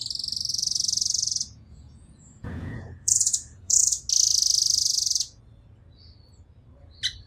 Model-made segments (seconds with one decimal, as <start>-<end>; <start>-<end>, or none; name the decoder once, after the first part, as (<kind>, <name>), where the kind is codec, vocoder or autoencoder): 0.5-4.0 (vocoder, Vocos); 4.8-5.4